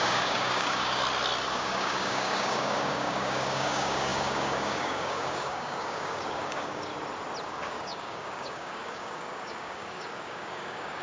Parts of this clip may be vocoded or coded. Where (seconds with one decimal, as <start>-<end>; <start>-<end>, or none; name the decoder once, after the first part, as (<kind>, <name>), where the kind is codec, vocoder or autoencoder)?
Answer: 0.0-1.0 (codec, DAC); 1.5-6.9; 7.4-11.0